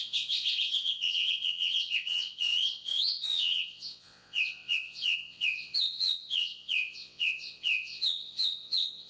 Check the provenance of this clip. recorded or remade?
remade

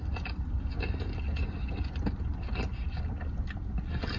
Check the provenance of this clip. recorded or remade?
recorded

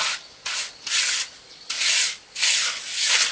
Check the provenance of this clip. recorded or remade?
recorded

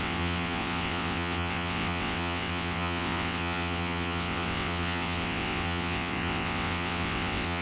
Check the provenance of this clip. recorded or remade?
remade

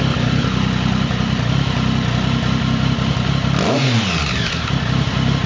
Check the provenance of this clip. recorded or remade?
recorded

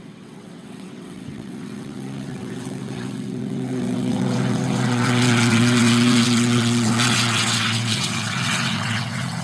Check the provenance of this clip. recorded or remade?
remade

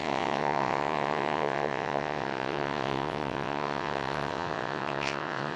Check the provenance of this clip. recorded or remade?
remade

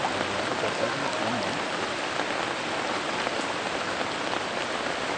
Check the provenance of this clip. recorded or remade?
recorded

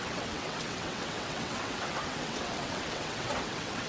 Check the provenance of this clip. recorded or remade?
remade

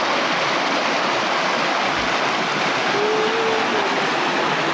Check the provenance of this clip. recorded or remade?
recorded